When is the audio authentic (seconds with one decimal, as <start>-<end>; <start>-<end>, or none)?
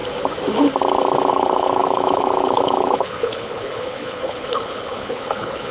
0.0-1.3